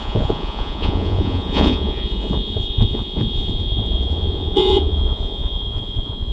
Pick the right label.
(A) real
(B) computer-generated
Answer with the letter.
B